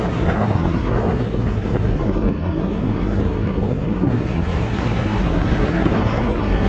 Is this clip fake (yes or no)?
yes